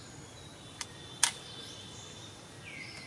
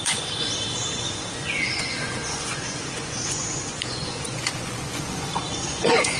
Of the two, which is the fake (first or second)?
second